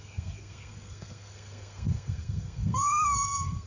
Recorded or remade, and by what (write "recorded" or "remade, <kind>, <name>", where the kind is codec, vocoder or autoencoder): remade, codec, SNAC